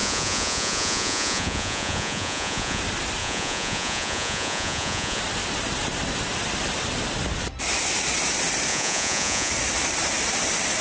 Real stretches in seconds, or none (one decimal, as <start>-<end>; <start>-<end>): 2.8-3.2; 5.2-8.7; 9.5-10.8